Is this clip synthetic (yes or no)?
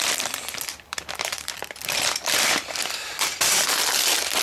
yes